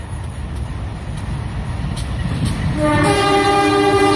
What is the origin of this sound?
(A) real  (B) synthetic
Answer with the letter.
A